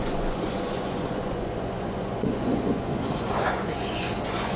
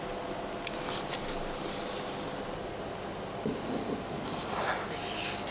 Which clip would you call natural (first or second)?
second